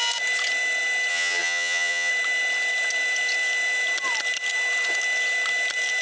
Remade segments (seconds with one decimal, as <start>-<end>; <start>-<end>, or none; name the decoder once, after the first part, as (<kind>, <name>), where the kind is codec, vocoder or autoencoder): 1.1-2.1 (vocoder, HiFi-GAN)